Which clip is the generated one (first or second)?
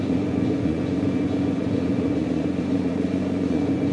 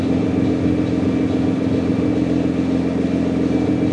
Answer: first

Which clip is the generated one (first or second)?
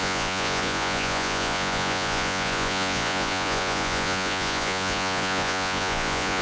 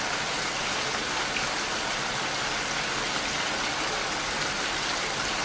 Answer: first